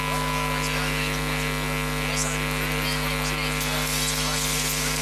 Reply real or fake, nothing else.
real